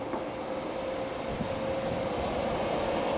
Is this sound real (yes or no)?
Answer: yes